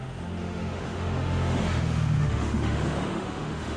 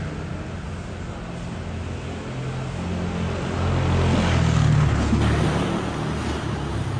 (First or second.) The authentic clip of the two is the second